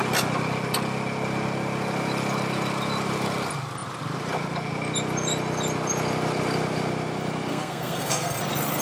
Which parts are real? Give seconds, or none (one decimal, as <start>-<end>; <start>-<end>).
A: 0.0-7.5; 8.4-8.8